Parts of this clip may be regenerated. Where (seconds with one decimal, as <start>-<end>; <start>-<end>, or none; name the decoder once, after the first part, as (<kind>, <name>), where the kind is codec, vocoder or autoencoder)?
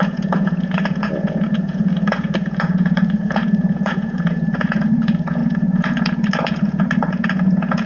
0.0-7.9 (vocoder, Vocos)